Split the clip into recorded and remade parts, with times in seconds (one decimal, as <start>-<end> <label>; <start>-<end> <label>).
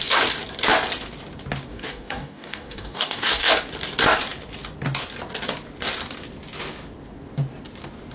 0.0-1.7 recorded; 1.7-3.5 remade; 3.5-8.1 recorded